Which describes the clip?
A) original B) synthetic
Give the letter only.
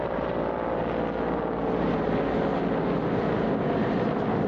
A